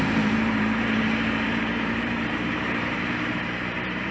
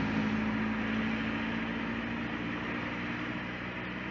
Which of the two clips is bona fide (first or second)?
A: second